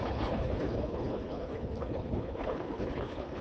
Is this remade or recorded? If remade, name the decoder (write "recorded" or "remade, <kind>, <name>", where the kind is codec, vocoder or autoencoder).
remade, codec, HILCodec